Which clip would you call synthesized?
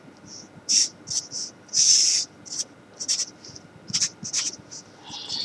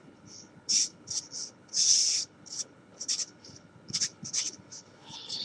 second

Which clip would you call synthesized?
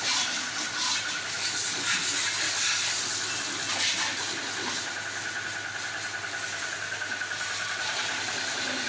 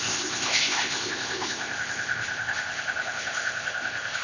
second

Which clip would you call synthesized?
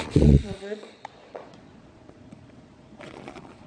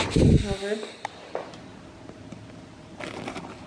first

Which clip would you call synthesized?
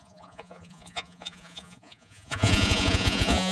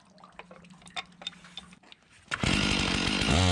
first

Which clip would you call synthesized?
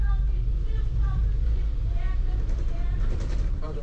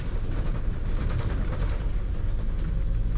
first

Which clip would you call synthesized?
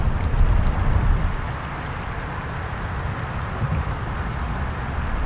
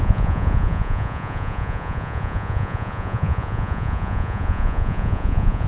second